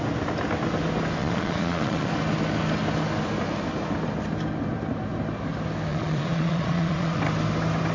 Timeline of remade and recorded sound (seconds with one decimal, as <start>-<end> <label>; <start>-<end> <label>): 0.0-1.2 recorded; 1.2-2.1 remade; 2.1-5.9 recorded; 5.9-7.2 remade; 7.2-7.9 recorded